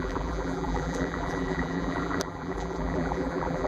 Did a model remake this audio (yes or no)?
yes